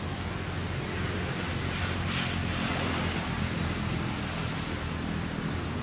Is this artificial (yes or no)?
no